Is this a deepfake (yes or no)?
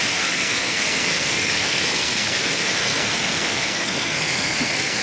yes